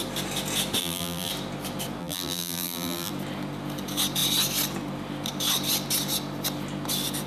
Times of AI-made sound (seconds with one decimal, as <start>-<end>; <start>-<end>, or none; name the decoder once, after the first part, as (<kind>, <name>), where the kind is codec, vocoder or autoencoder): 0.8-1.3 (vocoder, BigVGAN v2); 2.0-3.1